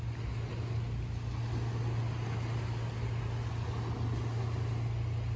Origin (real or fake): real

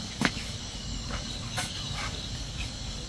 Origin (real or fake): fake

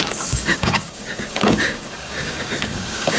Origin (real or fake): fake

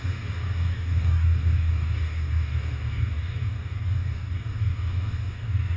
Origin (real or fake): fake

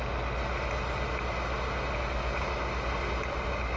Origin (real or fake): real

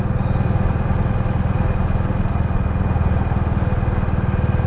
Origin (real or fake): real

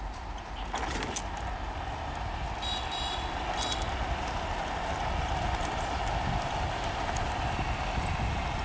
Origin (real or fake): real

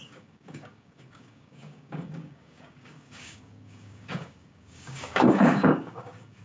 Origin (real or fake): fake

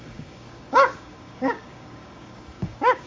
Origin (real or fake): fake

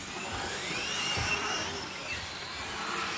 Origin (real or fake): real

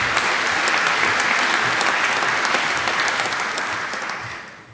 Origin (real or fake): real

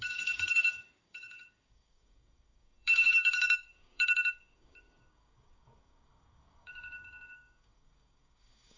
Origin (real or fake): fake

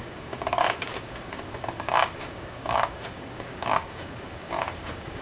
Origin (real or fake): fake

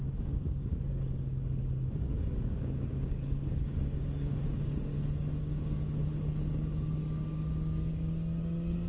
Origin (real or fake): fake